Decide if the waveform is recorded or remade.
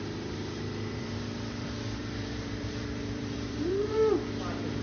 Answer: remade